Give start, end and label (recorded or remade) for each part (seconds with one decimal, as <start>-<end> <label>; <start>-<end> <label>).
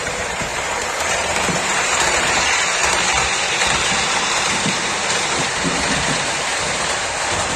0.0-7.6 remade